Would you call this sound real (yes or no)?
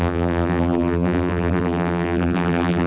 no